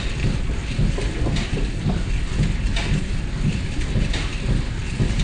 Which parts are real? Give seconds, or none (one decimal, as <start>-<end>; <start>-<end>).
0.0-5.2